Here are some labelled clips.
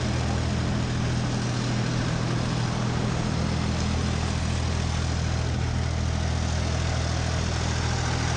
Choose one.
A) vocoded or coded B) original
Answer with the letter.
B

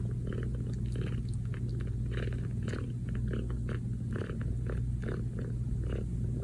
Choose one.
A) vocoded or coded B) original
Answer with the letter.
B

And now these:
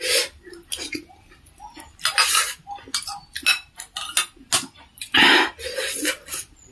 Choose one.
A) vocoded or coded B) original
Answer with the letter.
B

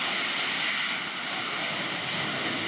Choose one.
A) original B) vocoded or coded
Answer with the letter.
A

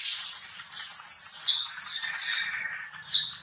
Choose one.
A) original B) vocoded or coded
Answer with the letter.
A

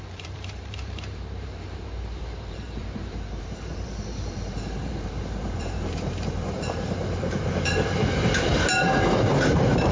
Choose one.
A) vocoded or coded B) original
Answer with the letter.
A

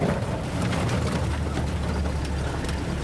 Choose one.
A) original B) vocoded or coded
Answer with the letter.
A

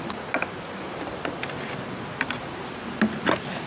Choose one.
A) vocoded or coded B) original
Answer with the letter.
B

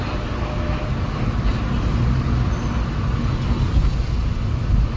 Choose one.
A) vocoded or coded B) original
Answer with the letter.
B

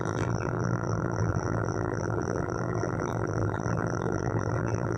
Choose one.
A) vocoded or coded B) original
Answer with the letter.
A